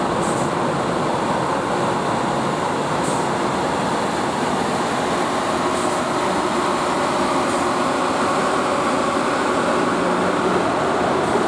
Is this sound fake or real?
real